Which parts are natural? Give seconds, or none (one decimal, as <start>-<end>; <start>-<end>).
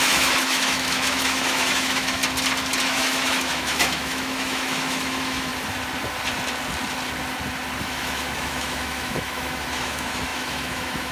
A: 2.2-2.8; 5.5-7.8